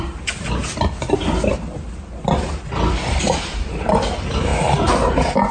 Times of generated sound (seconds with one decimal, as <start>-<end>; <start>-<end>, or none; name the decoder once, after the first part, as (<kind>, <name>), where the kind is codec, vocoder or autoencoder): 0.0-0.6 (vocoder, BigVGAN v2); 2.9-4.5; 5.1-5.5